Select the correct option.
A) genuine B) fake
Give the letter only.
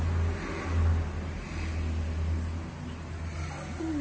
A